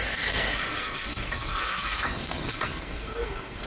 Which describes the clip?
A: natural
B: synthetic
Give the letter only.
B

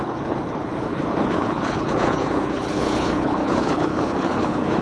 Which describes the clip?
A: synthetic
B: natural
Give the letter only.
A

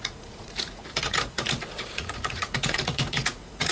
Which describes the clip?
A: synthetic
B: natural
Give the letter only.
A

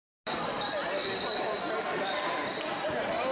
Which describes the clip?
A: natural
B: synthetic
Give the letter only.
A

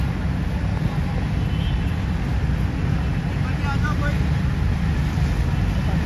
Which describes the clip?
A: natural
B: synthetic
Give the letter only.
A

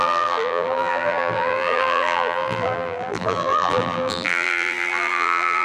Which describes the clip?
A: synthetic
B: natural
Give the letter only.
A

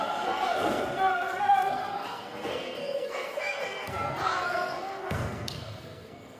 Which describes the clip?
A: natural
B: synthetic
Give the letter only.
B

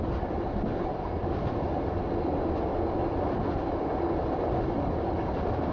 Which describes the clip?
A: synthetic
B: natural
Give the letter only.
B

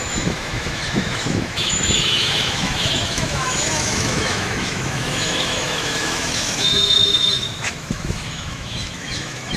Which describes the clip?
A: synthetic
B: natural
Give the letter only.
A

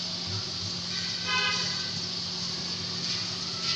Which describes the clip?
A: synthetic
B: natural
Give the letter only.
B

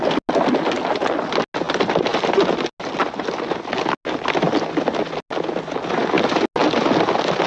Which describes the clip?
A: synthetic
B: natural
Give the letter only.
B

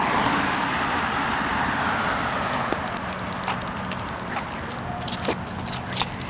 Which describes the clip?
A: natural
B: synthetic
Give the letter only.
A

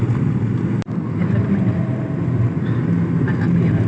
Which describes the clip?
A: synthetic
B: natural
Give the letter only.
B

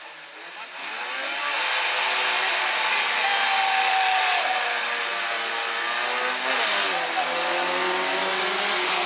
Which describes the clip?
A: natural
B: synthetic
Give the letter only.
A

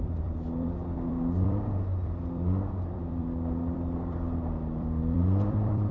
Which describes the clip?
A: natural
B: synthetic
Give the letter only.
B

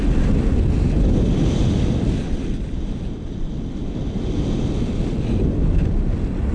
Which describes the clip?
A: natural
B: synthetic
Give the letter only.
A